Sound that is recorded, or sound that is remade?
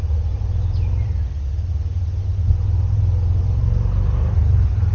recorded